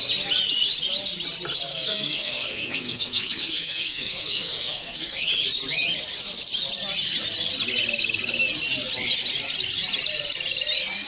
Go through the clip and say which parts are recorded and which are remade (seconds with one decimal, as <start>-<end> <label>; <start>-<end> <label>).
0.0-1.7 recorded; 1.7-5.3 remade; 5.3-11.1 recorded